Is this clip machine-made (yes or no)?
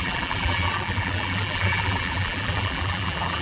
yes